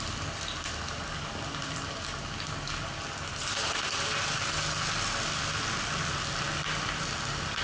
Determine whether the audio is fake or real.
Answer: real